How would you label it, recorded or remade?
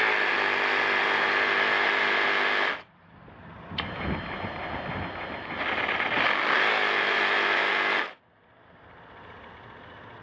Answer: recorded